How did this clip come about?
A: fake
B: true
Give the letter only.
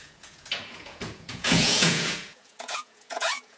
A